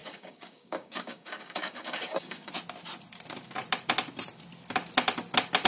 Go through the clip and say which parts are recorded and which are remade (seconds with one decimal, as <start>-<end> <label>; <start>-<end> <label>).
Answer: 0.0-2.5 remade; 2.5-5.7 recorded